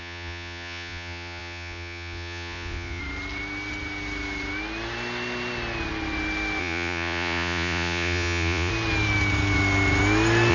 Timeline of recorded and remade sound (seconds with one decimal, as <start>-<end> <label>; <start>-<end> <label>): 0.0-3.0 remade; 3.0-6.6 recorded; 6.6-8.7 remade; 8.7-10.5 recorded